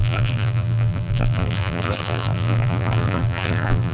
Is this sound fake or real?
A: fake